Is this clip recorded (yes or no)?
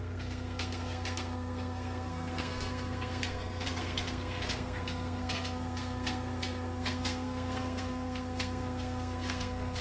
no